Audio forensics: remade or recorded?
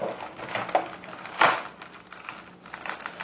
recorded